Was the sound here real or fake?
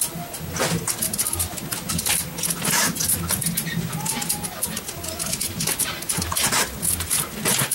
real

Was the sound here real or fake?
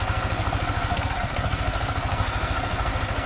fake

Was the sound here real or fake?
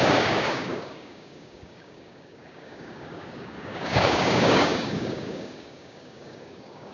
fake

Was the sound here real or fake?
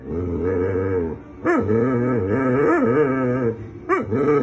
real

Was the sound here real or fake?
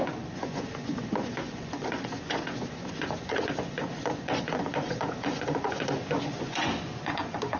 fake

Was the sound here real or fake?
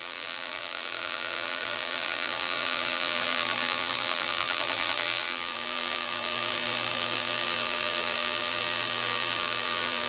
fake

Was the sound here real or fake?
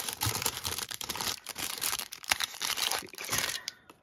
fake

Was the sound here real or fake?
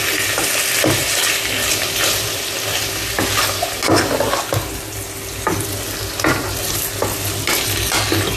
real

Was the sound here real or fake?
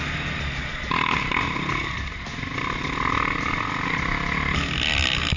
real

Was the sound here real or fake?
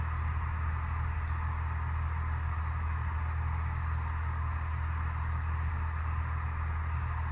real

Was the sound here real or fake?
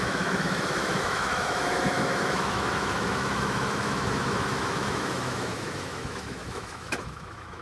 fake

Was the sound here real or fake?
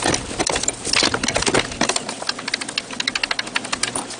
real